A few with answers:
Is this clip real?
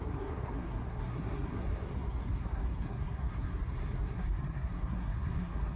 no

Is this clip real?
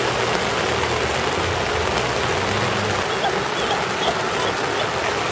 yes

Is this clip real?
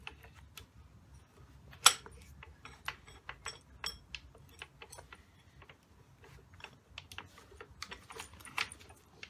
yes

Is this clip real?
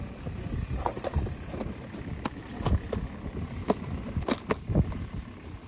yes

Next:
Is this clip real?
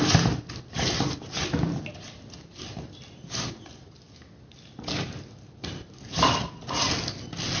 yes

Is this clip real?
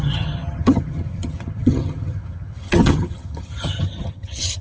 no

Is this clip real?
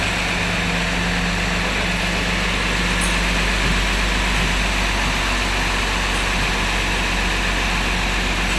yes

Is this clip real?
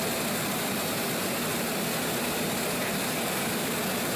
yes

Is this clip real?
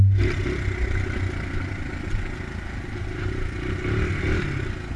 yes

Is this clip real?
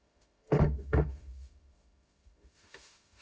no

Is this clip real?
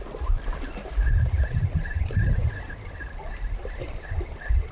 yes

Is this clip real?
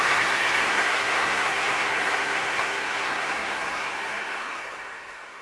no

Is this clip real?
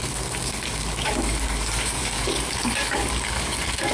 no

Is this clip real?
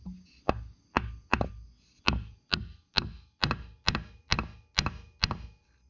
yes